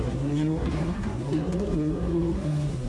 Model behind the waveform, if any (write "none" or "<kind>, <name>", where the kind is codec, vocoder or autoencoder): codec, SNAC